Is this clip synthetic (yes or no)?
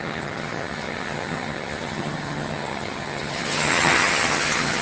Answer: yes